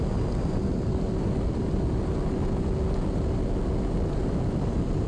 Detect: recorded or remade recorded